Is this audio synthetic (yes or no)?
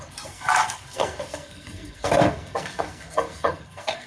yes